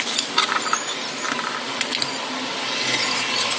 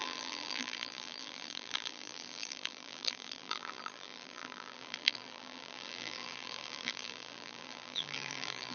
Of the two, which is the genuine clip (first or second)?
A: first